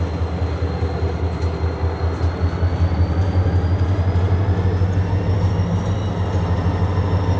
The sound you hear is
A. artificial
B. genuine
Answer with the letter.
B